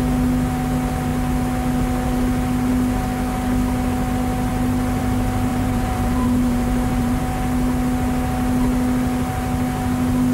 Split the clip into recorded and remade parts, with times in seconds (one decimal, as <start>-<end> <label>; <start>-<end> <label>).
0.0-5.5 recorded; 5.5-7.2 remade; 7.2-10.3 recorded